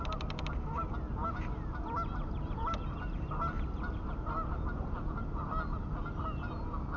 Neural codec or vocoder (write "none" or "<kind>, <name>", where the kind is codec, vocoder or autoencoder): none